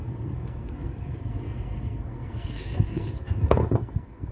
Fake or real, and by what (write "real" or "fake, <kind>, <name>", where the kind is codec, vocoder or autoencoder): fake, codec, SNAC